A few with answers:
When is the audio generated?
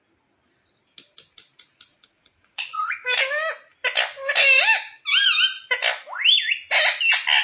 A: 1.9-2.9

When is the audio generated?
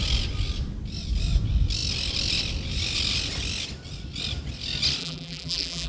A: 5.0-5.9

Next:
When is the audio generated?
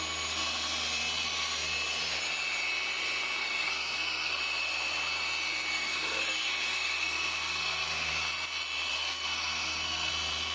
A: 3.4-4.4; 5.7-8.1; 8.9-10.1